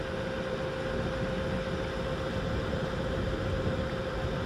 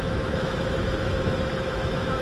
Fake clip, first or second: second